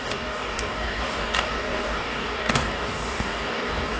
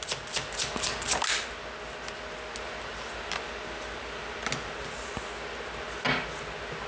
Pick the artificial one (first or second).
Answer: first